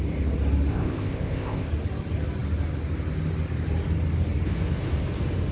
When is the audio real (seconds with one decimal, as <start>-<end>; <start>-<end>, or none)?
0.0-0.7; 1.7-5.5